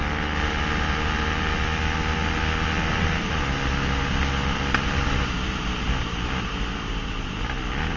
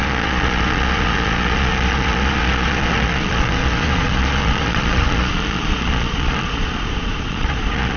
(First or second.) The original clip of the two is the first